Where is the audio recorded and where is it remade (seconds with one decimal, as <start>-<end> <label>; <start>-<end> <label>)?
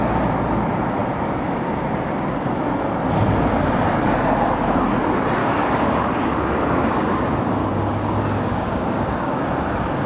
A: 0.0-5.4 recorded; 5.4-9.5 remade; 9.5-10.1 recorded